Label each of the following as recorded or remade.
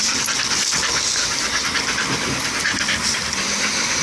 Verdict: recorded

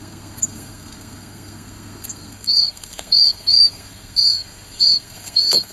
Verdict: remade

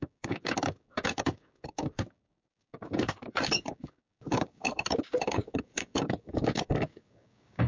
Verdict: remade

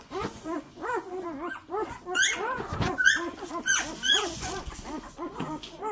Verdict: remade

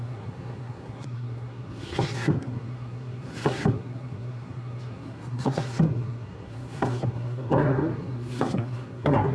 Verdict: remade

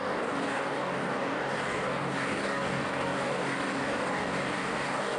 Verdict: remade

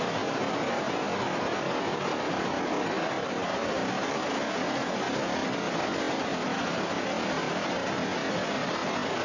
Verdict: recorded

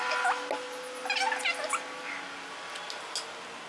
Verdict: recorded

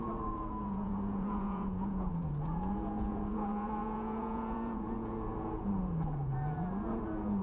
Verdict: remade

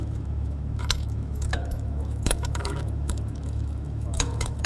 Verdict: remade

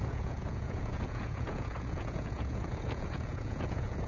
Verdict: remade